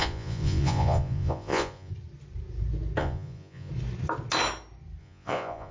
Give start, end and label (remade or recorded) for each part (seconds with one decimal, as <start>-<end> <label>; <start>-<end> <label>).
0.0-1.9 remade; 1.9-3.0 recorded; 3.0-3.7 remade; 3.7-5.0 recorded; 5.0-5.7 remade